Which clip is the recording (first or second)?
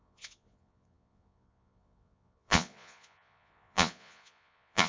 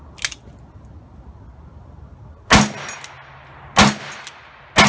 second